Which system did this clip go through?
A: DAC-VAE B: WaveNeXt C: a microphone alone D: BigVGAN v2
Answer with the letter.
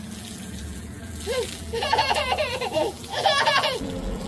D